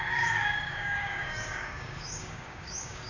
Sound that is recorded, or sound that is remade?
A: remade